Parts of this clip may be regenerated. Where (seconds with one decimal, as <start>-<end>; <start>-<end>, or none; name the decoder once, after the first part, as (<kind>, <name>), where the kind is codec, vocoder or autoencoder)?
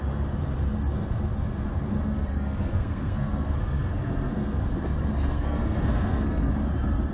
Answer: 1.9-4.6 (codec, SNAC); 5.3-6.5